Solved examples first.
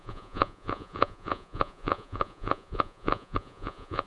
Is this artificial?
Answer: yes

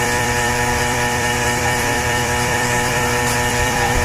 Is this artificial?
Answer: yes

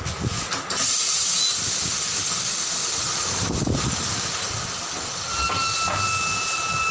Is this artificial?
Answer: no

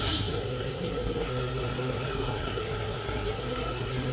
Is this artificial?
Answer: yes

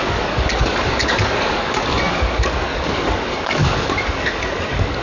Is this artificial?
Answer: yes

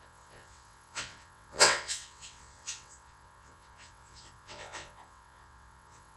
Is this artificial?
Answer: yes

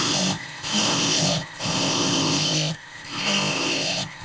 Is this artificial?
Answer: yes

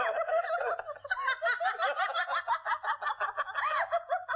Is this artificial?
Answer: no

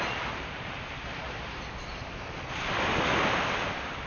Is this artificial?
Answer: no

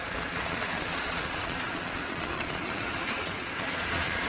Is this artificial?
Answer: yes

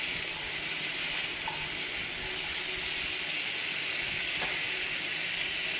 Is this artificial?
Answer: no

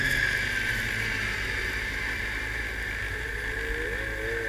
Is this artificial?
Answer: no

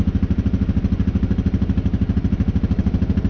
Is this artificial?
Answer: no